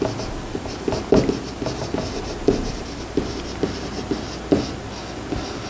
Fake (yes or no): no